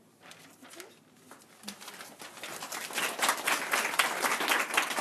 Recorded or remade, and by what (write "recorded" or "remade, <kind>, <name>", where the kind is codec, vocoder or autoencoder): recorded